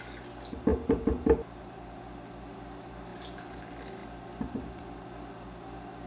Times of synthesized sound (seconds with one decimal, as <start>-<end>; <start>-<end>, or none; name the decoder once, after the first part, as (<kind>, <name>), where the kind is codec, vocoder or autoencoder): 0.7-2.0 (vocoder, BigVGAN v2); 3.1-3.6